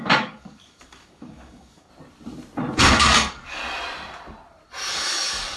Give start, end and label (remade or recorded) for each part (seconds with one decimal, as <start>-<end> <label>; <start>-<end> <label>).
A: 0.0-1.9 remade; 1.9-2.8 recorded; 2.8-3.6 remade; 3.6-4.9 recorded; 4.9-5.6 remade